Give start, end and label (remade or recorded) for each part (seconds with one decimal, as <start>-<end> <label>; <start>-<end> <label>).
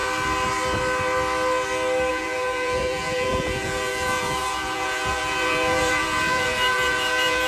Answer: 0.0-2.1 recorded; 2.1-7.5 remade